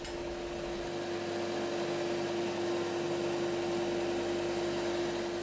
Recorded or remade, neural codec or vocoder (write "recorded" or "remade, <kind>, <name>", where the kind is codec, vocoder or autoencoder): recorded